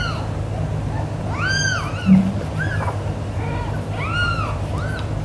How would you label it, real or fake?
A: real